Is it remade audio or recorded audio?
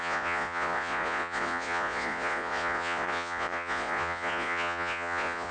remade